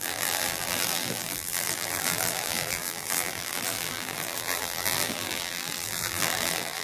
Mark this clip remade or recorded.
remade